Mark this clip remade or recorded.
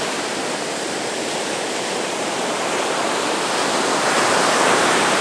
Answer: remade